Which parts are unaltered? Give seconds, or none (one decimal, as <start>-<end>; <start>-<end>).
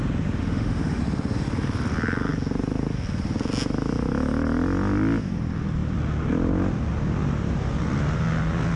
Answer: 0.0-0.4; 1.0-8.8